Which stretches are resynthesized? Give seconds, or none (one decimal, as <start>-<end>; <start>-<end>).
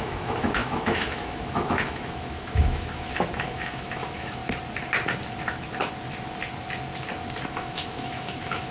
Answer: 0.0-4.4; 7.5-8.7